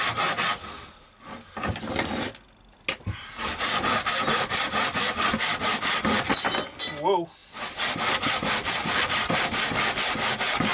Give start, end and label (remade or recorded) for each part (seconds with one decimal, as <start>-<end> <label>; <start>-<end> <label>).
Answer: 0.0-10.7 recorded